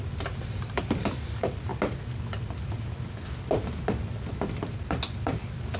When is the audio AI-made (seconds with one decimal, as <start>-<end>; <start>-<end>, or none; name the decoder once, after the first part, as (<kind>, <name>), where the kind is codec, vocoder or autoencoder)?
none